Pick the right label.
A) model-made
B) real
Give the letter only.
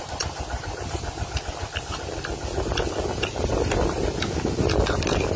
B